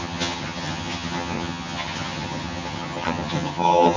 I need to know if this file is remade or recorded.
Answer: remade